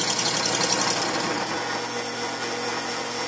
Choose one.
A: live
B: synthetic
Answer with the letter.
A